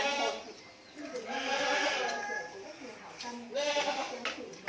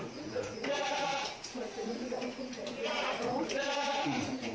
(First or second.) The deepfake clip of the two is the second